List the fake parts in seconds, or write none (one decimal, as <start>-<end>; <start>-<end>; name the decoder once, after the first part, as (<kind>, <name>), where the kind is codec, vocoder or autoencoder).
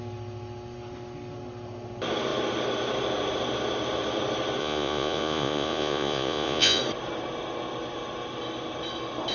4.6-6.8 (vocoder, Vocos)